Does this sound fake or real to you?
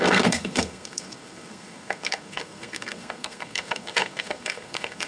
fake